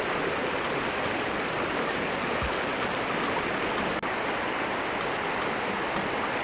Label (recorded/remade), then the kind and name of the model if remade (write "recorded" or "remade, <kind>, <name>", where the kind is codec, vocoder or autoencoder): recorded